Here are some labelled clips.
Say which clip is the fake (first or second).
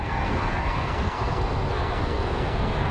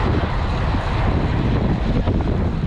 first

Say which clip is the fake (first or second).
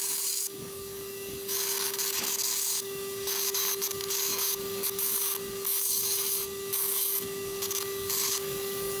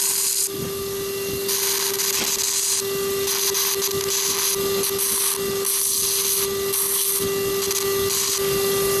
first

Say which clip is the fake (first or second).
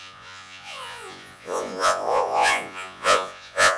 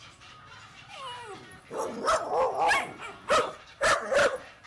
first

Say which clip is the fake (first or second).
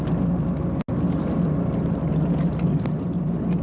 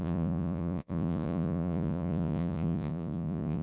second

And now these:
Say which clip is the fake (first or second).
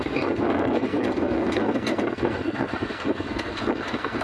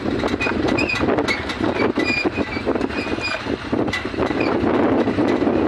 first